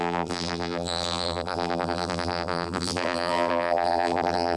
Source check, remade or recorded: remade